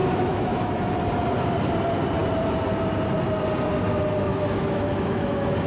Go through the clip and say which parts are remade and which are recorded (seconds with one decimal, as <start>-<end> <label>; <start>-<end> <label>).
0.0-0.9 remade; 0.9-4.3 recorded; 4.3-5.7 remade